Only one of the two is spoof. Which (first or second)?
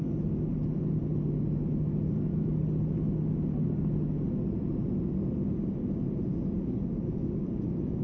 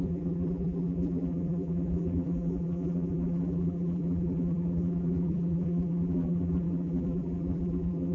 second